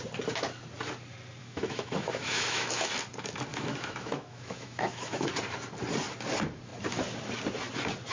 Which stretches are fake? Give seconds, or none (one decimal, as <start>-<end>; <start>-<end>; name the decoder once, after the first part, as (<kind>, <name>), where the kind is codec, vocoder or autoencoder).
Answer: 1.4-2.9 (autoencoder, DAC-VAE); 3.5-5.3